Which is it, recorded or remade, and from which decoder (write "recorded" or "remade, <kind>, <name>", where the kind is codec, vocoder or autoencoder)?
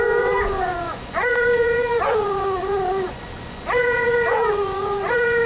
remade, vocoder, Vocos